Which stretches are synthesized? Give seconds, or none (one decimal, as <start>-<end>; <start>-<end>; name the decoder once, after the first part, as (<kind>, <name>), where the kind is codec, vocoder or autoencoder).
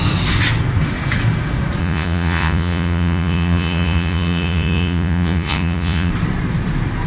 1.8-6.1 (vocoder, Vocos)